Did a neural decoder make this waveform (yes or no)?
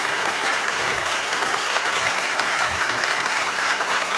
yes